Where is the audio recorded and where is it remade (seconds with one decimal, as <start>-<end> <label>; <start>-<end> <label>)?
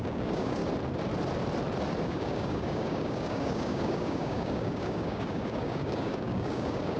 0.0-0.6 remade; 0.6-2.0 recorded; 2.0-7.0 remade